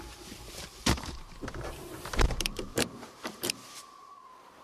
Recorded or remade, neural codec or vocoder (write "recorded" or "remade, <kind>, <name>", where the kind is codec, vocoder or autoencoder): remade, vocoder, BigVGAN v2